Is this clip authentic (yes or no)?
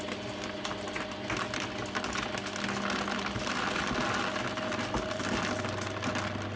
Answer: yes